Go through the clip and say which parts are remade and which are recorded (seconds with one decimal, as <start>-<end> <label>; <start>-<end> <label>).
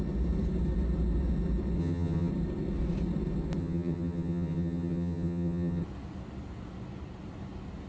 0.0-1.8 recorded; 1.8-2.3 remade; 2.3-3.6 recorded; 3.6-5.8 remade; 5.8-7.9 recorded